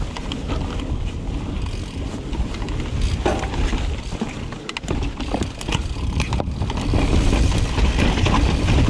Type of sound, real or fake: real